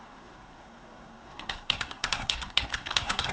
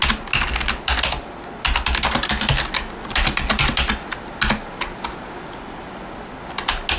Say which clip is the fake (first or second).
first